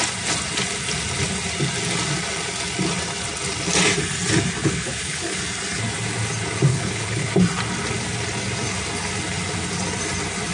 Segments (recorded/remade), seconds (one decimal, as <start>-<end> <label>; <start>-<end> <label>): 0.0-4.6 recorded; 4.6-5.4 remade; 5.4-6.7 recorded; 6.7-7.3 remade; 7.3-10.5 recorded